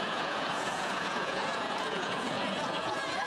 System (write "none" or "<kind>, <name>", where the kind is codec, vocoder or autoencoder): vocoder, Vocos